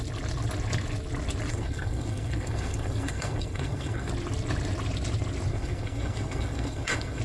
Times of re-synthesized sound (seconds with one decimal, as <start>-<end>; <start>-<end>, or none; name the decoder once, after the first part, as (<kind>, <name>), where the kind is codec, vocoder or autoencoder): 1.5-4.1 (codec, SNAC); 5.5-7.2